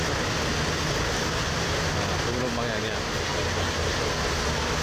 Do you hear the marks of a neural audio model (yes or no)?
no